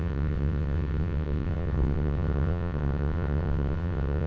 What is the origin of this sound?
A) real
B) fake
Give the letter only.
B